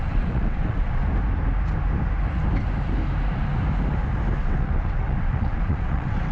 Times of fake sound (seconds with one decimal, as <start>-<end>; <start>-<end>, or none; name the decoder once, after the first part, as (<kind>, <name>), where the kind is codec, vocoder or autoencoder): 0.0-1.0 (vocoder, WaveNeXt); 4.4-6.3